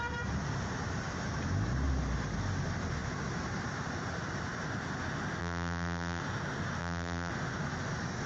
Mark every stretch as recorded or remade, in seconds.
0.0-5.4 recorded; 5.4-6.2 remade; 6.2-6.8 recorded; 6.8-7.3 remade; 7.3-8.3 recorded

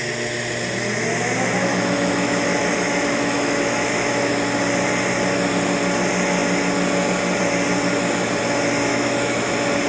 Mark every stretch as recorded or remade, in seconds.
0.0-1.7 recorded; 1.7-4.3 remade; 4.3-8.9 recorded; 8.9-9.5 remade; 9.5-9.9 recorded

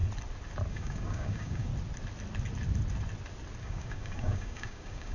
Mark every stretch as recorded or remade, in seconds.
0.0-0.7 recorded; 0.7-1.7 remade; 1.7-3.6 recorded; 3.6-5.1 remade